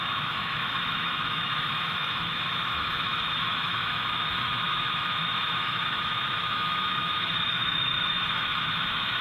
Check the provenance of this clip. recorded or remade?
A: remade